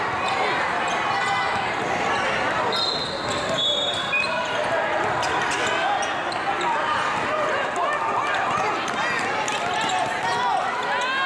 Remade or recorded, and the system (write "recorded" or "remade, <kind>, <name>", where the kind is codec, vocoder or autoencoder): recorded